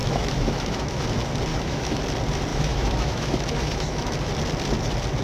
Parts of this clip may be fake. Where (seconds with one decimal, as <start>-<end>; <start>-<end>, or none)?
0.0-1.0; 1.5-2.0; 2.5-4.3